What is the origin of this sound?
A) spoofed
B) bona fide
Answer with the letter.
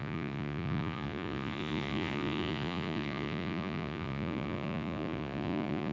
A